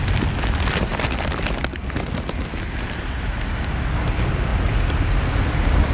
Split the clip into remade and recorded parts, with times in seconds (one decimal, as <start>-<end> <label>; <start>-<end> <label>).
0.0-5.9 recorded